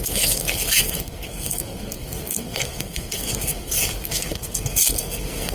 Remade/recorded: remade